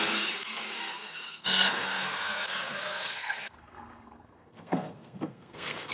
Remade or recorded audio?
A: remade